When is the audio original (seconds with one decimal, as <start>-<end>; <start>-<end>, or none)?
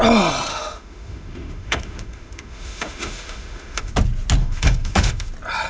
0.0-0.5; 3.9-4.4; 5.3-5.7